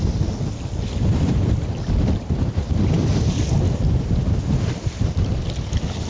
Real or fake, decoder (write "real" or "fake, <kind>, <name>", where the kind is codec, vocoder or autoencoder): real